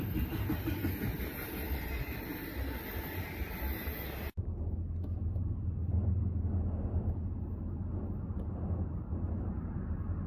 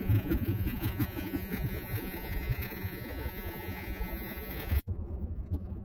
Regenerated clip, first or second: second